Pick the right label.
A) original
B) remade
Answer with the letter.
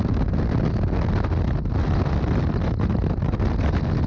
A